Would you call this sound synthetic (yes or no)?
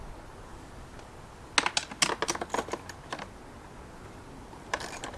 no